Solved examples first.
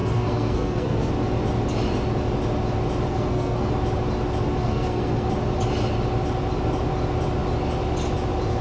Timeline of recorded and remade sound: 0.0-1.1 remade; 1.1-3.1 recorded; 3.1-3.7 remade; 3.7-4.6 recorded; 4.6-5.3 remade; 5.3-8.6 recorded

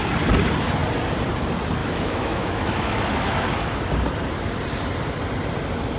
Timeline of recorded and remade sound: 0.0-1.8 recorded; 1.8-3.8 remade; 3.8-6.0 recorded

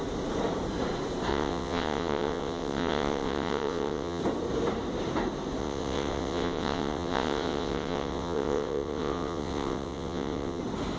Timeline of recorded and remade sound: 0.0-1.3 recorded; 1.3-4.2 remade; 4.2-5.6 recorded; 5.6-10.6 remade; 10.6-11.0 recorded

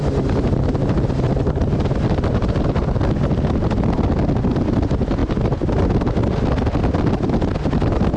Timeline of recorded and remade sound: 0.0-8.2 recorded

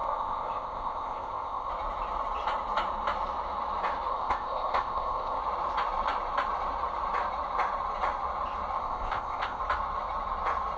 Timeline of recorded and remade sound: 0.0-1.7 remade; 1.7-4.1 recorded; 4.1-5.4 remade; 5.4-8.8 recorded; 8.8-9.6 remade; 9.6-10.8 recorded

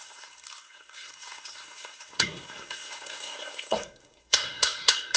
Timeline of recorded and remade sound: 0.0-5.2 remade